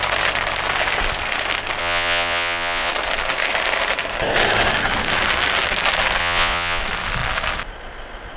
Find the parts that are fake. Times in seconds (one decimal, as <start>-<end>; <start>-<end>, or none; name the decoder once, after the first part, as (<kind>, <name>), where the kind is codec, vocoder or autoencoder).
1.8-2.9 (vocoder, Vocos); 6.2-6.8